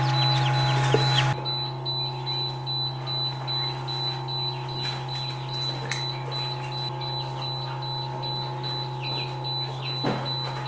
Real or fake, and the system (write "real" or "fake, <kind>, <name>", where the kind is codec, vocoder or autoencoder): real